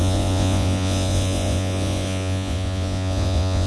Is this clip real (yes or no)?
no